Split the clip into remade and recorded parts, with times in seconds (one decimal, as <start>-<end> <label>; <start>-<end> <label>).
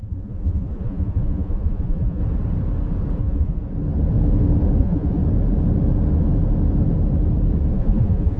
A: 0.0-2.2 remade; 2.2-3.2 recorded; 3.2-3.6 remade; 3.6-4.8 recorded; 4.8-5.2 remade; 5.2-7.7 recorded; 7.7-8.4 remade